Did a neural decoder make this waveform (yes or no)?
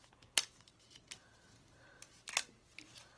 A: no